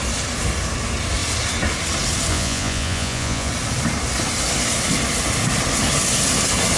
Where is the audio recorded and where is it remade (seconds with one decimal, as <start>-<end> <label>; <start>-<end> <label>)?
0.0-2.3 recorded; 2.3-3.5 remade; 3.5-6.8 recorded